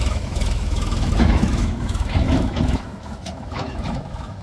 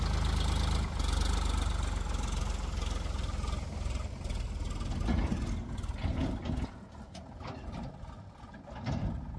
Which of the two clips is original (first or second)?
second